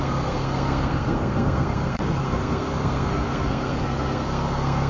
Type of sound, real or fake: fake